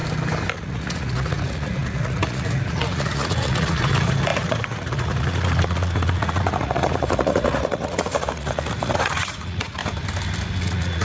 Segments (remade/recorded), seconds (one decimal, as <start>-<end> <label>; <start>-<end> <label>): 0.0-0.6 recorded; 0.6-9.8 remade; 9.8-10.6 recorded; 10.6-11.0 remade